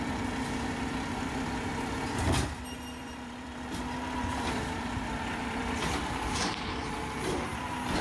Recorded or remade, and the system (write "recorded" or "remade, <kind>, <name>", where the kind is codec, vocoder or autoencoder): remade, vocoder, BigVGAN v2